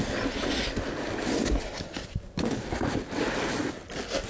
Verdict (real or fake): real